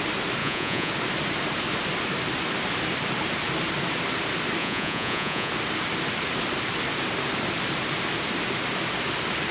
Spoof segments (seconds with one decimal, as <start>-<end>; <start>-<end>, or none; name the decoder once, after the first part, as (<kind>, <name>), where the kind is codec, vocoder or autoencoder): 0.4-0.9 (vocoder, Vocos); 4.6-5.5